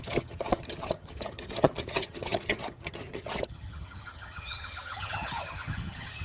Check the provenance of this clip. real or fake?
fake